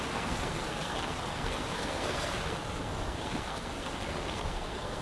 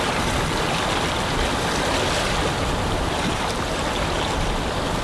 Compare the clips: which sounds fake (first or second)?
first